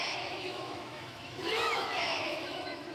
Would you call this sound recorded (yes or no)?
no